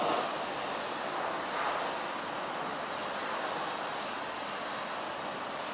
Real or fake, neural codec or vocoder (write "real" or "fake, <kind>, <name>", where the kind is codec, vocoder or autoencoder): real